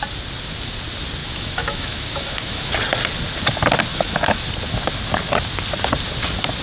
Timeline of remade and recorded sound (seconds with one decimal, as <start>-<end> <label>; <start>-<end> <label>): 0.0-1.2 recorded; 1.2-2.7 remade; 2.7-3.9 recorded; 3.9-4.5 remade; 4.5-6.6 recorded